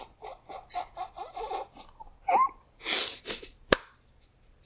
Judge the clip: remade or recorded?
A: remade